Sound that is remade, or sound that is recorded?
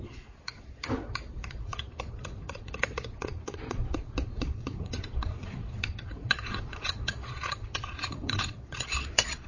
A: remade